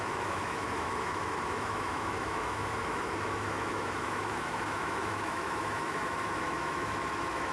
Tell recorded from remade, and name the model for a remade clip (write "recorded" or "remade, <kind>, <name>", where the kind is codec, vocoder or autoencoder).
remade, autoencoder, DAC-VAE